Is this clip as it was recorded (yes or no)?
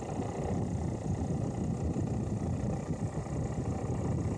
yes